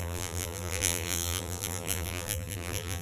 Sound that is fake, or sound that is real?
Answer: fake